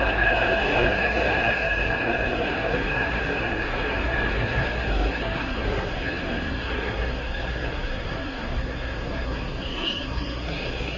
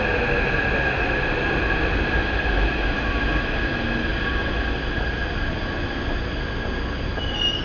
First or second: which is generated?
first